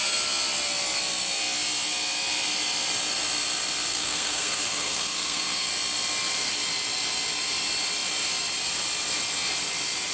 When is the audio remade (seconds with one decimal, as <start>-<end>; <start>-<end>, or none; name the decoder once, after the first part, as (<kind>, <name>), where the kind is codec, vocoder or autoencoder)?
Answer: 3.9-5.7 (codec, SNAC)